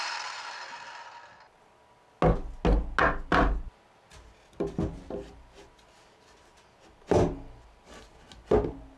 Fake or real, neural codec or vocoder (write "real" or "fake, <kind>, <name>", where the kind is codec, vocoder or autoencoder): real